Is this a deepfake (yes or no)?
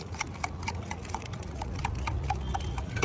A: yes